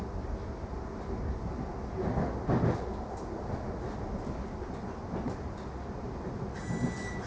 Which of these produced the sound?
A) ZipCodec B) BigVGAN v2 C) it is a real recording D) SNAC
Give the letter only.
C